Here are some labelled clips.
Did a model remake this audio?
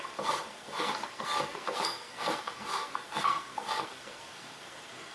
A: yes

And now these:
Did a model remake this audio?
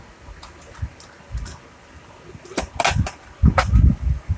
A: no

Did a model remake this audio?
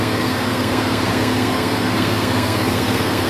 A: yes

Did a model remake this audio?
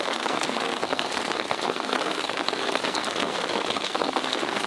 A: yes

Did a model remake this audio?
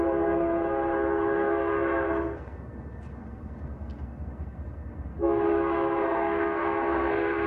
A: yes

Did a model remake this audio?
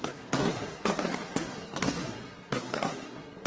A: yes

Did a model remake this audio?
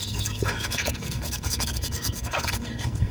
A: yes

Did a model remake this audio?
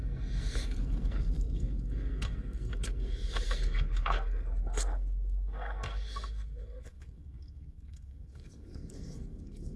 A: yes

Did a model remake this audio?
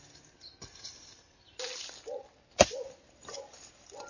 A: no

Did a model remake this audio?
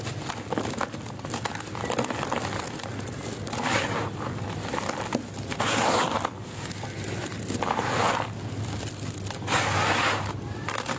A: no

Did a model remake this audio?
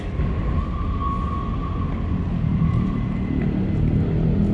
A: no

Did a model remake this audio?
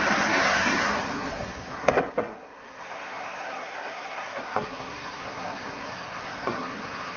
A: yes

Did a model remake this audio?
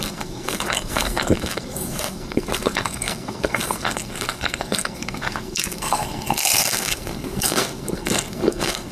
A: yes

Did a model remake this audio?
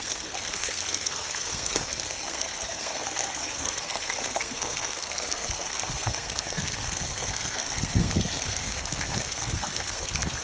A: yes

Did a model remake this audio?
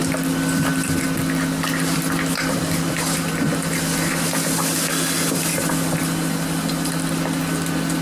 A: no